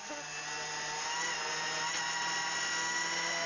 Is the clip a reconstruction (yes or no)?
no